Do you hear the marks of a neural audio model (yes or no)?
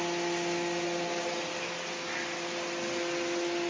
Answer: no